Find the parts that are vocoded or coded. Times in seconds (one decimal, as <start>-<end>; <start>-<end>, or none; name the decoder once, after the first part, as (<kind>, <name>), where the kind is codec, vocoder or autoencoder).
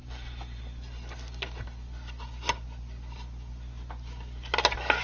0.0-0.6 (vocoder, BigVGAN v2)